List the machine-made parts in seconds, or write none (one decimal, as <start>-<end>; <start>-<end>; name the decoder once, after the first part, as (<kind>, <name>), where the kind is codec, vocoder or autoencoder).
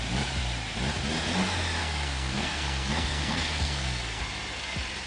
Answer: 1.8-4.2 (codec, SNAC)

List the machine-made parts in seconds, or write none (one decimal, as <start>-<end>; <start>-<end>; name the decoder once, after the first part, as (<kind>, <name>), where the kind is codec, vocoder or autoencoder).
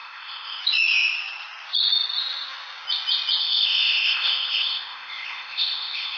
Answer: 0.0-0.6 (codec, ZipCodec); 3.4-6.2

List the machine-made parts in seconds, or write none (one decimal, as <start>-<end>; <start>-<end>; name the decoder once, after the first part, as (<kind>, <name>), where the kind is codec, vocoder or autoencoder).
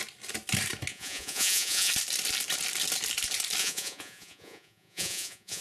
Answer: 0.9-1.9 (vocoder, Vocos); 3.6-5.6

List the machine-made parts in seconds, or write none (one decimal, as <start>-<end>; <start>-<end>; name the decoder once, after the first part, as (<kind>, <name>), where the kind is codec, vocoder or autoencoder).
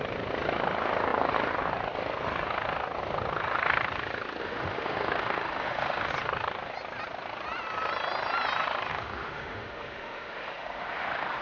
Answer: 4.4-6.1 (autoencoder, DAC-VAE); 8.9-11.4